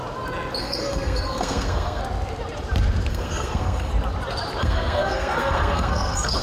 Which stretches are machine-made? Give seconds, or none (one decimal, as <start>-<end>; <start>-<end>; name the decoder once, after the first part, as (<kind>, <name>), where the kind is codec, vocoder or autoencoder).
0.6-2.0 (codec, SNAC); 3.1-3.9; 4.6-6.4